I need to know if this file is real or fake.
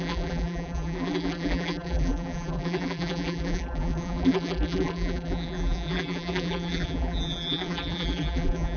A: fake